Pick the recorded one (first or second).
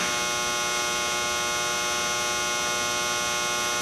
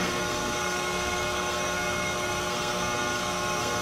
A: first